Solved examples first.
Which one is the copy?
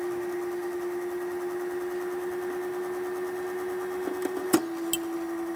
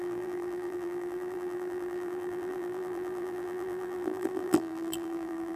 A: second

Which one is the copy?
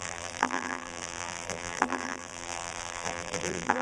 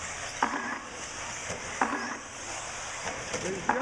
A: first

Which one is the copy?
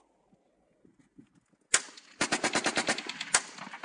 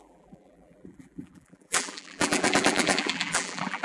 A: second